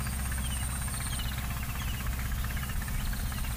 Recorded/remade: recorded